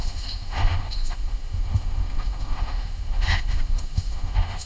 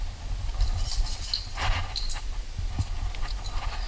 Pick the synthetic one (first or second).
first